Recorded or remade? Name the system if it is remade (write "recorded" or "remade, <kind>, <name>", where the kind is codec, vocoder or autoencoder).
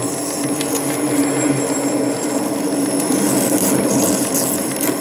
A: recorded